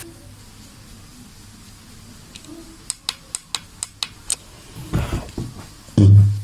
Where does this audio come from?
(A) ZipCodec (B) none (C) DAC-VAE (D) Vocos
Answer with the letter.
B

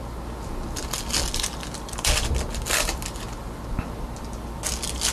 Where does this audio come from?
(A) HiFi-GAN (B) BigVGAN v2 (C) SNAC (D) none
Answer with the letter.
D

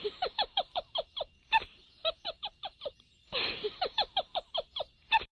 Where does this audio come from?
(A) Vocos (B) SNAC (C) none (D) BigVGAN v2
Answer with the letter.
D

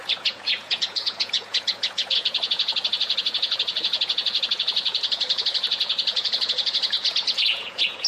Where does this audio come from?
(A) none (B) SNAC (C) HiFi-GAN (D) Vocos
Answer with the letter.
D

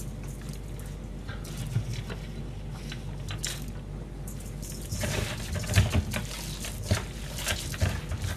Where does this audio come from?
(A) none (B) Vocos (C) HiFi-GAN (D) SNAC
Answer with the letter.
A